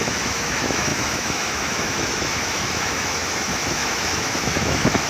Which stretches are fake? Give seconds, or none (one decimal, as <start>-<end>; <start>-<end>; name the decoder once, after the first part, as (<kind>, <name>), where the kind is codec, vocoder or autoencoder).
0.0-5.1 (autoencoder, DAC-VAE)